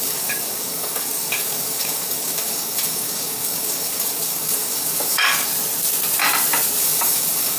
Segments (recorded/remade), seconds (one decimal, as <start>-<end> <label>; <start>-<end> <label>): 0.0-5.5 remade; 5.5-6.8 recorded; 6.8-7.6 remade